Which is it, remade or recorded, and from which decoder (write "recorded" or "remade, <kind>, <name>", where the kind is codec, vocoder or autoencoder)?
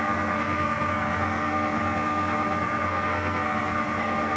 remade, codec, SNAC